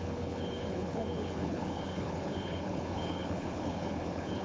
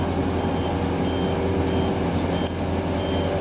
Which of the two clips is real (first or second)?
second